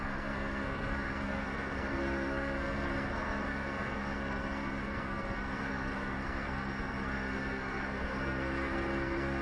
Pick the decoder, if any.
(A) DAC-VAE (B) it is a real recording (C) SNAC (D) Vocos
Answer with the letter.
C